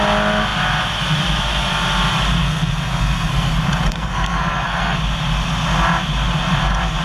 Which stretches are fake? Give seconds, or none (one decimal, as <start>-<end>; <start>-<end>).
2.4-3.5; 3.9-5.0